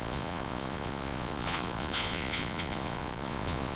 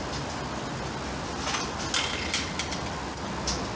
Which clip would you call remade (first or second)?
first